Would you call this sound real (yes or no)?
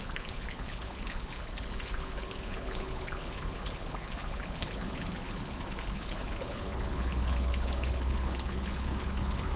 no